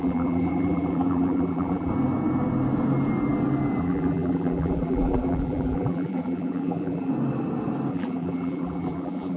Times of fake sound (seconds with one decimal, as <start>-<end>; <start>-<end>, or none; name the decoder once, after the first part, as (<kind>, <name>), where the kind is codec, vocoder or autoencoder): 0.0-1.9 (vocoder, BigVGAN v2); 3.8-7.1; 7.9-9.4